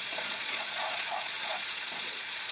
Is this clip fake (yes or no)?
yes